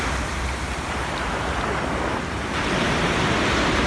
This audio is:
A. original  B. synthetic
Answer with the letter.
A